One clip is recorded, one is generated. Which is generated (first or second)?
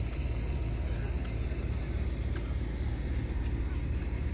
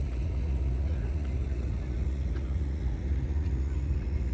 second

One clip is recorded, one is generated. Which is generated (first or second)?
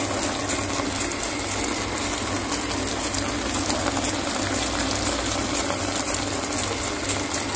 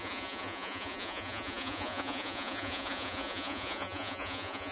second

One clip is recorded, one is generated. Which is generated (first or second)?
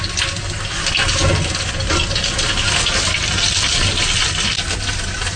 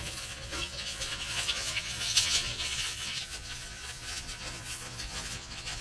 second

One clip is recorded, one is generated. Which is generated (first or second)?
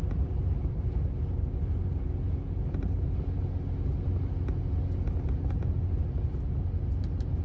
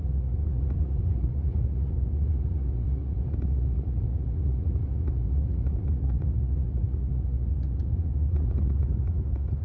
second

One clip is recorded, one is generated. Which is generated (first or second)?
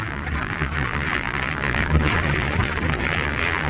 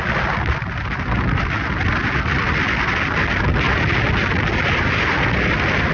first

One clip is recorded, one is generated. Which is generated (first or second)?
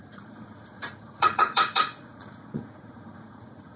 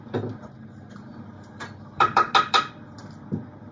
first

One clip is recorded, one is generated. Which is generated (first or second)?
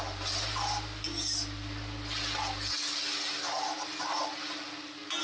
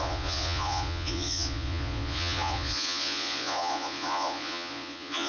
second